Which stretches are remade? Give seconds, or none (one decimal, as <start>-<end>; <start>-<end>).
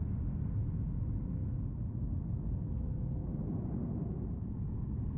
none